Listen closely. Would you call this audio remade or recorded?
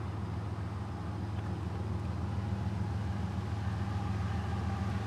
recorded